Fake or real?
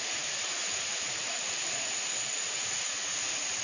fake